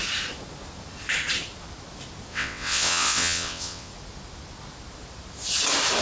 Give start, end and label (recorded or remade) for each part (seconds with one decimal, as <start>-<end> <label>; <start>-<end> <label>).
0.0-2.3 recorded; 2.3-3.9 remade; 3.9-6.0 recorded